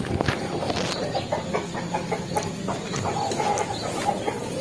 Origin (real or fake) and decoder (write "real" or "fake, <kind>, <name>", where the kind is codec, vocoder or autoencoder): real